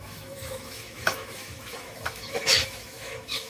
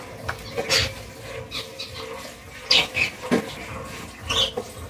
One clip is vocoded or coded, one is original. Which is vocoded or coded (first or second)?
first